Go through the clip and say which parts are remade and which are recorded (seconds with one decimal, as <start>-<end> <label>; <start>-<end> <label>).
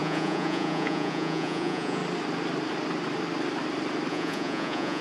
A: 0.0-2.0 remade; 2.0-4.1 recorded; 4.1-5.0 remade